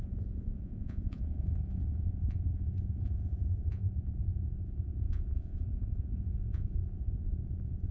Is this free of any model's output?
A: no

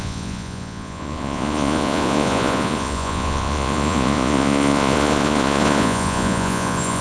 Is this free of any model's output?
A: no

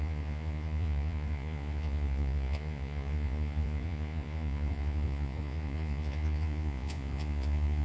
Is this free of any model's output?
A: no